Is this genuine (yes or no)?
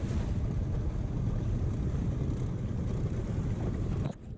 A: yes